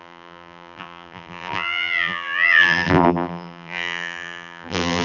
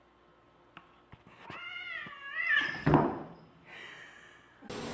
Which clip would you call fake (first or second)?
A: first